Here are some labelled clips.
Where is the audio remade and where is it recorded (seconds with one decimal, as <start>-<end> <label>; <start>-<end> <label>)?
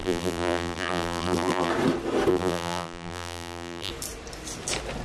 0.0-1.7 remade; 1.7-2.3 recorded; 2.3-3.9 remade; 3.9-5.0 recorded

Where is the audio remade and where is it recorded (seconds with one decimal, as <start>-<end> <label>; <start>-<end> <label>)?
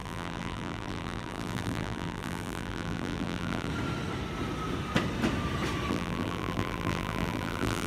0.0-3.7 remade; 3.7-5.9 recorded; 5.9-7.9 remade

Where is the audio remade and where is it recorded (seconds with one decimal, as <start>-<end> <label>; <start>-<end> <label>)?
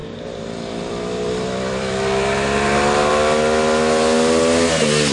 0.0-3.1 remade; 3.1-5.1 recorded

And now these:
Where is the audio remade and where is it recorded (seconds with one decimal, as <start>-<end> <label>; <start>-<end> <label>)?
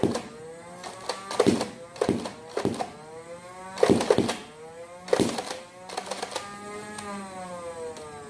0.0-8.3 recorded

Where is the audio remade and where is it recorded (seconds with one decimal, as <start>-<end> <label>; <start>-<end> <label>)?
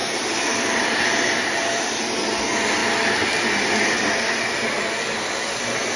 0.0-2.2 remade; 2.2-6.0 recorded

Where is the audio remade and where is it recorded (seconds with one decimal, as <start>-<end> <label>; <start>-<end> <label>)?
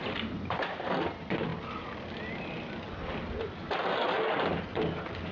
0.0-1.5 remade; 1.5-4.7 recorded; 4.7-5.3 remade